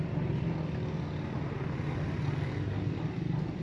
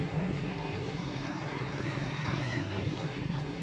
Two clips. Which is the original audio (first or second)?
first